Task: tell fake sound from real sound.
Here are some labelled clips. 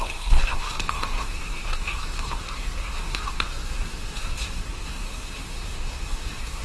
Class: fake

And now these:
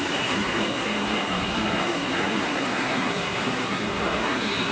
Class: fake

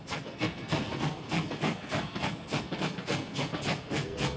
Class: fake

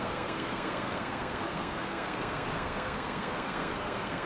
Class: fake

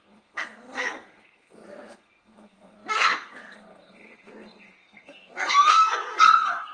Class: fake